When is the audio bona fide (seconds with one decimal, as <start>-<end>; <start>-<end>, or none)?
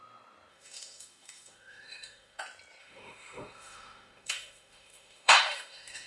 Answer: 0.0-0.5; 2.4-2.8